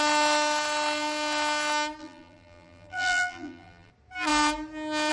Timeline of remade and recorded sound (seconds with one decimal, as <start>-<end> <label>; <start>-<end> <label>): 0.0-2.0 recorded; 2.0-3.9 remade; 3.9-5.1 recorded